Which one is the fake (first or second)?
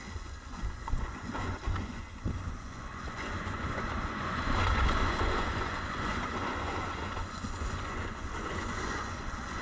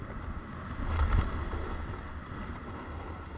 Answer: first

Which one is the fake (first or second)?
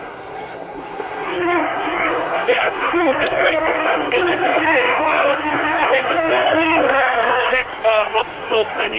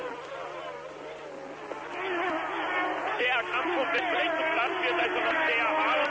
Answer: first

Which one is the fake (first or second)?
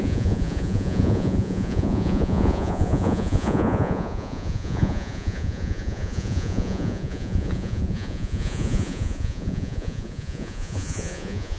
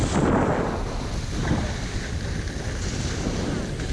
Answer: first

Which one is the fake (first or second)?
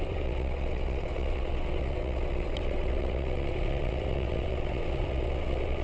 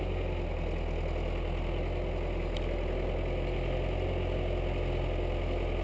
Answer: first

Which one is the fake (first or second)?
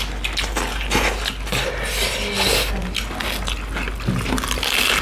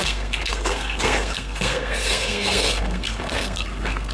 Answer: second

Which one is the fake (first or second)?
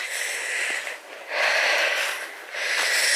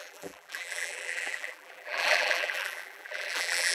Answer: second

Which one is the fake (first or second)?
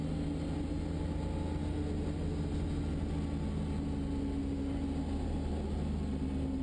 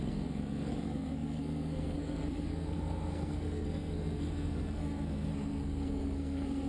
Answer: second